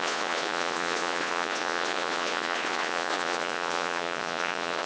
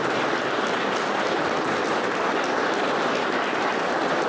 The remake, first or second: first